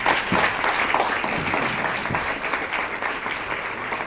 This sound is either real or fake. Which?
real